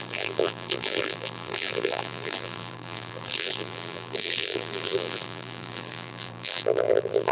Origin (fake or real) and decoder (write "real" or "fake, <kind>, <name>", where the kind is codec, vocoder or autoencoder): fake, vocoder, BigVGAN v2